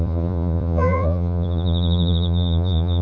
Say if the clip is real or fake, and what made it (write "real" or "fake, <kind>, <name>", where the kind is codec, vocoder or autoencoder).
fake, vocoder, Vocos